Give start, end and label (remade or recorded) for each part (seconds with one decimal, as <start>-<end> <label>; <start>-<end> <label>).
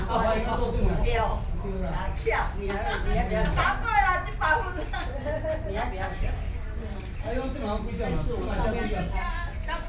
0.0-9.9 recorded